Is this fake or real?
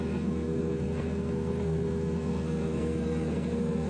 fake